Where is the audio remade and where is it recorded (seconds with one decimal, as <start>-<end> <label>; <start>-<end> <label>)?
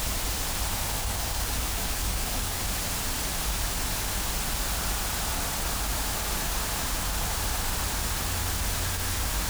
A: 0.0-1.0 recorded; 1.0-2.6 remade; 2.6-9.5 recorded